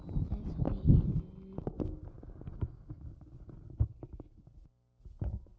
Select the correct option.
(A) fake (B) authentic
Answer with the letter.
B